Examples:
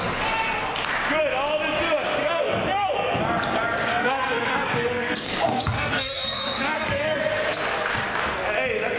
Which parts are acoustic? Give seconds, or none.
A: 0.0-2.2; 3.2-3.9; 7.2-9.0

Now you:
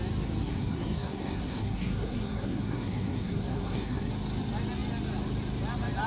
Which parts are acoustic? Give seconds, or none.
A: 0.0-0.4; 4.1-6.1

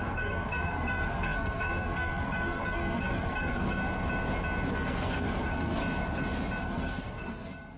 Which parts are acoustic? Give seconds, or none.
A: 3.8-4.7; 5.8-6.6

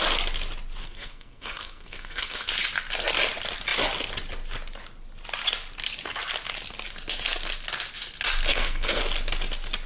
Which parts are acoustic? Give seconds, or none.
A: 0.0-0.8; 2.5-8.5; 9.0-9.9